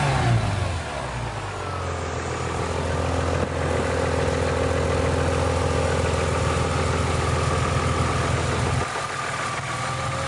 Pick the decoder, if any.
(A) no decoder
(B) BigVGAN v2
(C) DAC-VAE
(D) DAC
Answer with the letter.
A